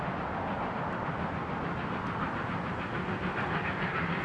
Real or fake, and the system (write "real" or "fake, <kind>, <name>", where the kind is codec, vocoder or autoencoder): real